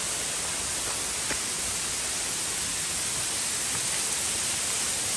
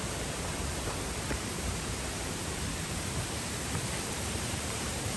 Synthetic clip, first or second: second